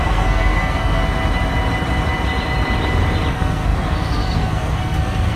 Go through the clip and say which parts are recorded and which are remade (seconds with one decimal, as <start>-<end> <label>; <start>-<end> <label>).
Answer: 0.0-1.0 remade; 1.0-3.3 recorded; 3.3-5.4 remade